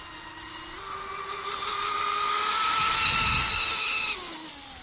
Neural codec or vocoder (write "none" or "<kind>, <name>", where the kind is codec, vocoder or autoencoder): none